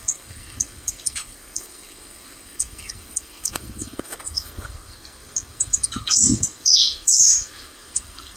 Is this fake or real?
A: fake